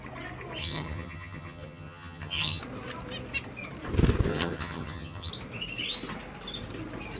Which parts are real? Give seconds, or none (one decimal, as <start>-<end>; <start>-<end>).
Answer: 0.0-0.6; 2.6-4.3; 5.3-7.2